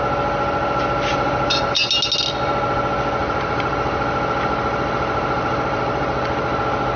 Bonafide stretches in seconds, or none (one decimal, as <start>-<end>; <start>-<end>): 0.0-1.1; 1.9-3.2; 6.6-7.0

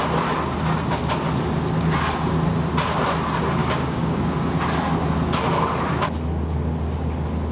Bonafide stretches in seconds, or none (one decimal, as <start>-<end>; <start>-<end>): 0.0-3.6; 4.2-7.5